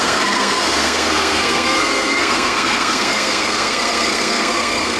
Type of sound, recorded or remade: remade